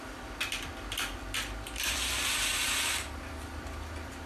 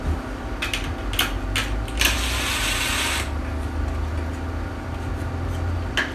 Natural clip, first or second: second